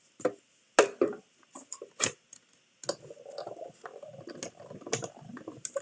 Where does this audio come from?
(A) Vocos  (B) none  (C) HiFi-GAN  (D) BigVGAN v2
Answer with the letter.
B